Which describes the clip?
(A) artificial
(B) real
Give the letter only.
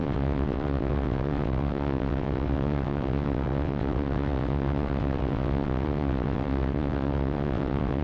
A